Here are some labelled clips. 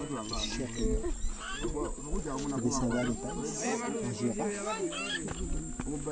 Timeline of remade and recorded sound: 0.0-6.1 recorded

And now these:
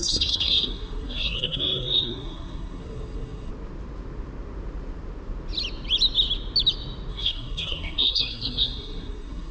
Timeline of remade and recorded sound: 0.0-3.5 remade; 3.5-7.1 recorded; 7.1-9.5 remade

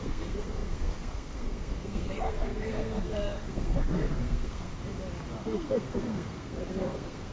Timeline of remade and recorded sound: 0.0-4.7 remade; 4.7-5.4 recorded; 5.4-7.3 remade

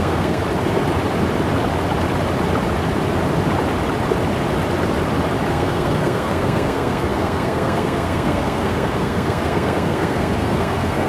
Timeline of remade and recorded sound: 0.0-0.4 remade; 0.4-5.5 recorded; 5.5-11.1 remade